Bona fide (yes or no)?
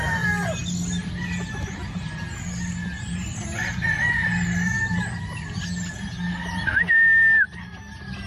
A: yes